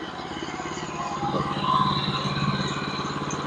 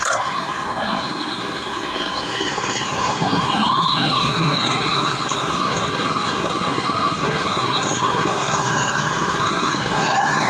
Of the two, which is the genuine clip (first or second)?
first